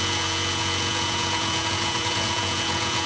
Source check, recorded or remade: remade